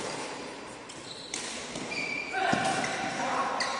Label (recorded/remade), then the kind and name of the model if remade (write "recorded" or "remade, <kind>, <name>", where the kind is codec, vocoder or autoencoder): remade, vocoder, BigVGAN v2